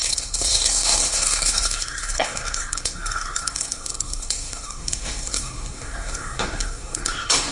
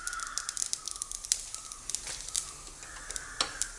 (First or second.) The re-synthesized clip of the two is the first